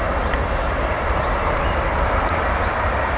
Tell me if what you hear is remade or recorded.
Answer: recorded